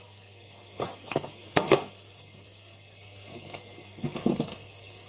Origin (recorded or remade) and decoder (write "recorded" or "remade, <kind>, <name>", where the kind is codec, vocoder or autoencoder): remade, codec, SNAC